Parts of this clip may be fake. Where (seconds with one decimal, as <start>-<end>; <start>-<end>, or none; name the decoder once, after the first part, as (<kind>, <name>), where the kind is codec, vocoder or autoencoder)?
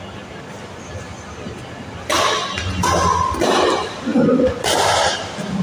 none